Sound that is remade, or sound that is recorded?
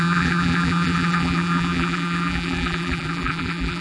remade